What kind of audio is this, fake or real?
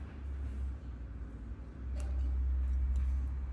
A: real